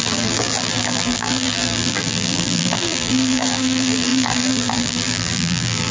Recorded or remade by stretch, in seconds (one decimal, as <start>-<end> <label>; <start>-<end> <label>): 0.0-5.9 remade

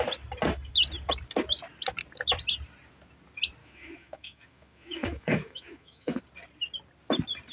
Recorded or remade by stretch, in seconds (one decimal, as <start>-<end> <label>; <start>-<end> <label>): 0.0-3.6 recorded; 3.6-6.2 remade; 6.2-7.5 recorded